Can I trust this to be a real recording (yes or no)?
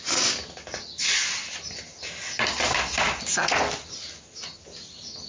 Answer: yes